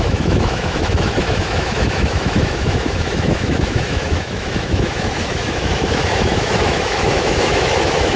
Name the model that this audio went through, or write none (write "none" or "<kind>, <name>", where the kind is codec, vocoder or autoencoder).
autoencoder, DAC-VAE